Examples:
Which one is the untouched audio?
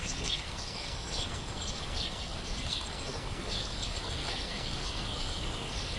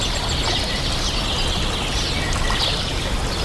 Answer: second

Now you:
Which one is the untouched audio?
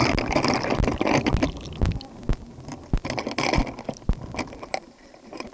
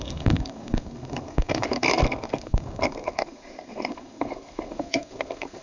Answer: first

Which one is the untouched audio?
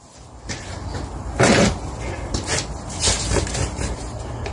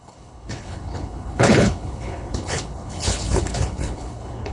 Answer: first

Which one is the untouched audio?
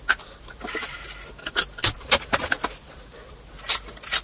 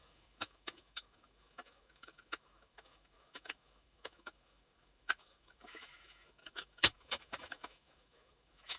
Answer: first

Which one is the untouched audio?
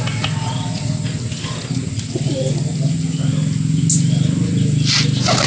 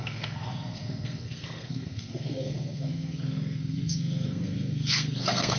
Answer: first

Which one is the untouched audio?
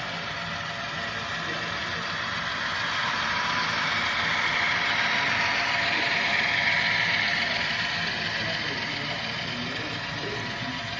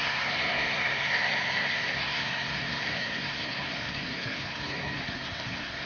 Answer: first